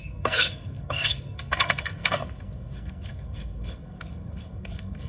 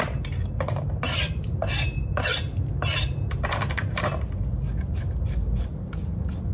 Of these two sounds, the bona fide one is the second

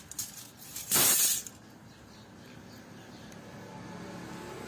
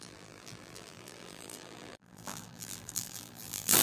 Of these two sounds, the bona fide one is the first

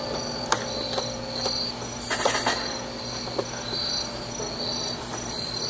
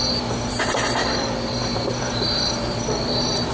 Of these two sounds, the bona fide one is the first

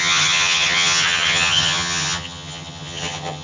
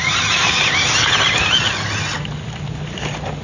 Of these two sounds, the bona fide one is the second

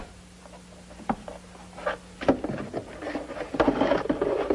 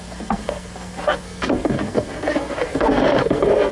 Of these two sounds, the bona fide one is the first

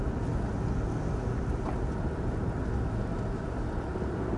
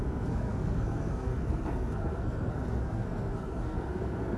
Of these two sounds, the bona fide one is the first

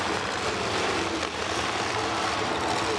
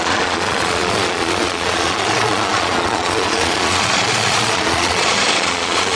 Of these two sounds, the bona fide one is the first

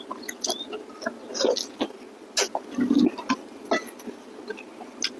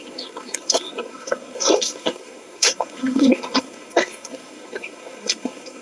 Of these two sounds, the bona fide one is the first